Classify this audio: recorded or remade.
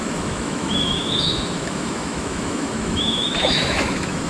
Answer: remade